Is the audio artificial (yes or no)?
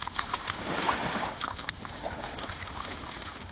yes